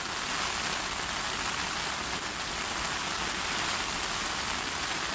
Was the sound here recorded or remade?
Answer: recorded